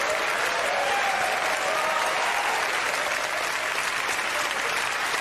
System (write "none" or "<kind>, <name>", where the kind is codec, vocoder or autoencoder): none